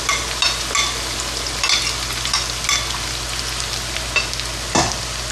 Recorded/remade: recorded